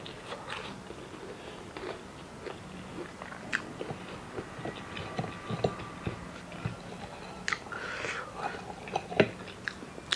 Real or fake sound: real